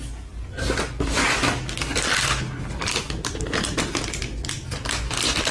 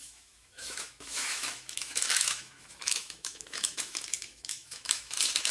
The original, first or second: first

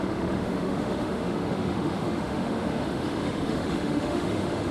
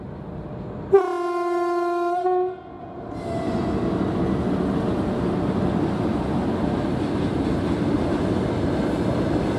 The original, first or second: second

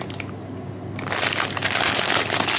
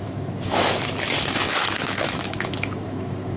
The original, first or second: first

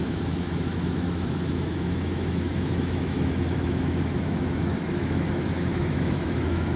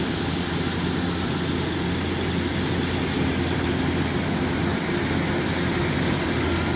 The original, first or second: second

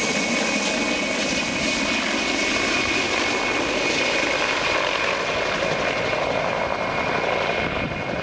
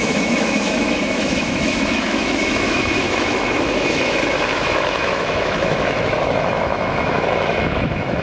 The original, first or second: first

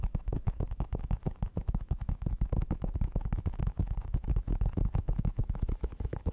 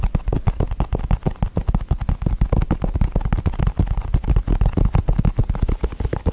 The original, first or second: second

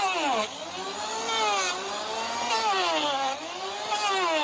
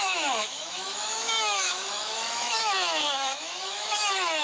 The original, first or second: first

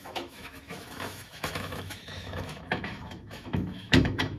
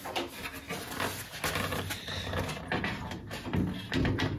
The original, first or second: second